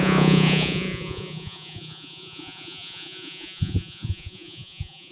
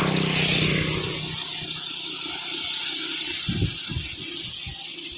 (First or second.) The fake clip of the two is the first